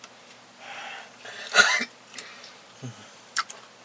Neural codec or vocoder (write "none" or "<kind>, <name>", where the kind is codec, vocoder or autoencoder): vocoder, BigVGAN v2